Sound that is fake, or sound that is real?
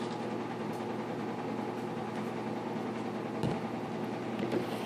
real